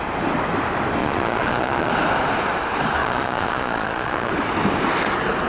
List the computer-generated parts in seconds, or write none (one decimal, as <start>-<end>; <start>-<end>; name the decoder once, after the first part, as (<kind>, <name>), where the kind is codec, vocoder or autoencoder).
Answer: 1.0-1.9 (vocoder, Vocos); 3.0-4.3